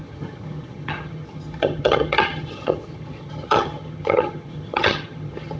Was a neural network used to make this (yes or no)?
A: yes